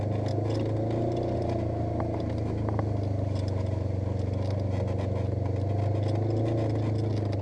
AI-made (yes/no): no